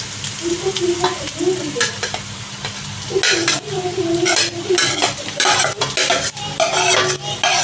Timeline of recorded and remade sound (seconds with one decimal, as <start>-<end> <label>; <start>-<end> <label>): 0.0-3.4 recorded; 3.4-5.8 remade; 5.8-7.6 recorded